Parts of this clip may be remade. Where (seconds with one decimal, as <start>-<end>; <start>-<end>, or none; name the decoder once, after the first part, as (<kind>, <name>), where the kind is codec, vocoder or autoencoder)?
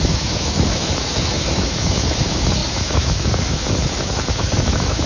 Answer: 0.0-5.1 (autoencoder, DAC-VAE)